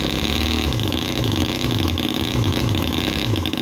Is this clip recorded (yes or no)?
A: no